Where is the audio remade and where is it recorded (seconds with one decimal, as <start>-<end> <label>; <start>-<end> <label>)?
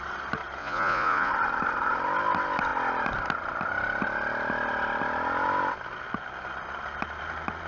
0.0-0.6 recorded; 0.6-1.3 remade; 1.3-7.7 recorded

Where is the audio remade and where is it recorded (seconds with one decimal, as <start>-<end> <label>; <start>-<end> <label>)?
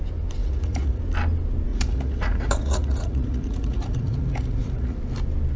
0.0-0.4 recorded; 0.4-1.0 remade; 1.0-1.7 recorded; 1.7-5.0 remade; 5.0-5.6 recorded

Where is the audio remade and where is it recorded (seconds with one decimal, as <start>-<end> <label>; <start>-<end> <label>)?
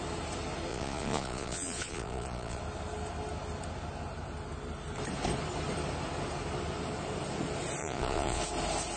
0.0-0.7 recorded; 0.7-2.6 remade; 2.6-7.8 recorded; 7.8-8.4 remade; 8.4-9.0 recorded